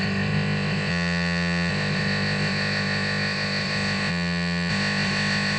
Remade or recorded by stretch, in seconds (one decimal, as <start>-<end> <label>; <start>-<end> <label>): 0.0-0.9 remade; 0.9-1.7 recorded; 1.7-4.1 remade; 4.1-4.7 recorded; 4.7-5.6 remade